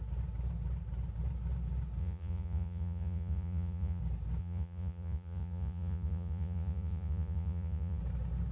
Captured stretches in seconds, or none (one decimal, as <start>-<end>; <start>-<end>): 0.0-2.0; 4.0-4.4; 8.0-8.5